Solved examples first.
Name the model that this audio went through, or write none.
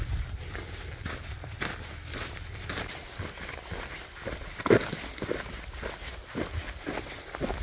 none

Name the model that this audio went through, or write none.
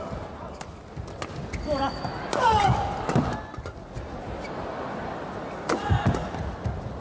none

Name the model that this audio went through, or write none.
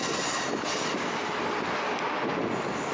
none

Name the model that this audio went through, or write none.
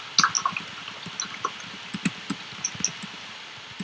none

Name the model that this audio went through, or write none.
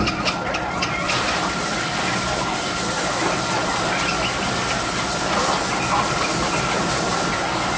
none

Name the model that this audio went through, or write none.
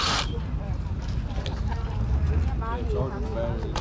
none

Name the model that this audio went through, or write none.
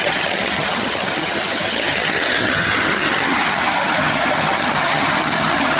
vocoder, HiFi-GAN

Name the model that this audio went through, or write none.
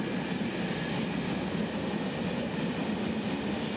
none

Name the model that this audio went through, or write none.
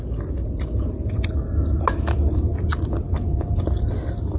none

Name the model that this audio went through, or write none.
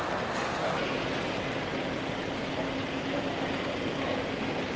none